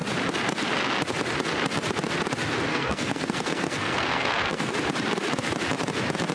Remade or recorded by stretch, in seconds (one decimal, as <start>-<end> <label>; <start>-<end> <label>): 0.0-2.7 recorded; 2.7-4.7 remade; 4.7-6.3 recorded